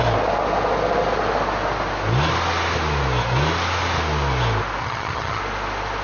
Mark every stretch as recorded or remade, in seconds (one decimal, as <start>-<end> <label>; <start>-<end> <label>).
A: 0.0-4.8 recorded; 4.8-5.4 remade; 5.4-6.0 recorded